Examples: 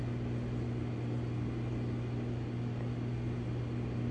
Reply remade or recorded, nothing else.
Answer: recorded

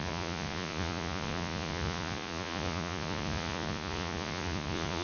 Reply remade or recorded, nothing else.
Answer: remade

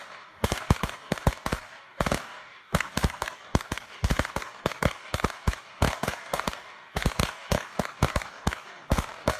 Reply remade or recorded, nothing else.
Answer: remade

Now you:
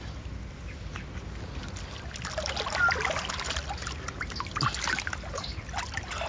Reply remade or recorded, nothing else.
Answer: recorded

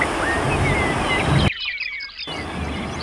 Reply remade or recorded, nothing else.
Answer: recorded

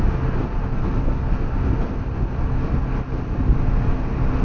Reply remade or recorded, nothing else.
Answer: recorded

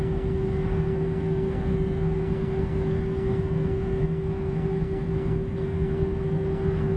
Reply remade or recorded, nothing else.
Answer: remade